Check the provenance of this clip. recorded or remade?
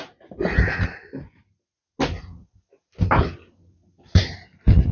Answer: recorded